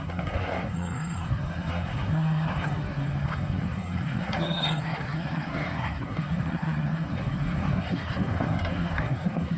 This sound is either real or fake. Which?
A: fake